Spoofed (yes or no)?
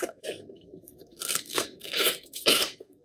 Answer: yes